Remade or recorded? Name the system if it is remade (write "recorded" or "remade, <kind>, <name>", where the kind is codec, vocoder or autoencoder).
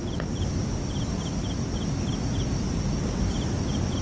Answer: recorded